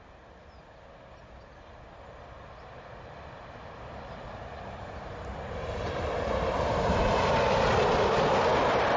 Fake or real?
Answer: real